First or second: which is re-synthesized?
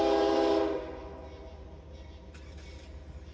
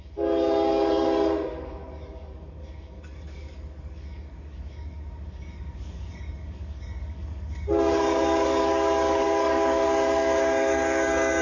second